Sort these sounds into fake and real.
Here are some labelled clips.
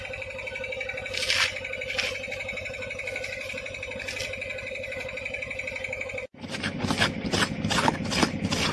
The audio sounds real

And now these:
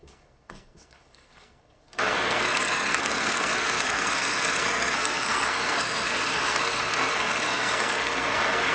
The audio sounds fake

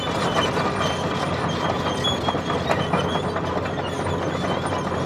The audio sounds real